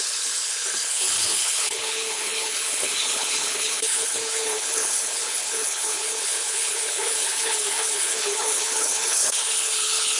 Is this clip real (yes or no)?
no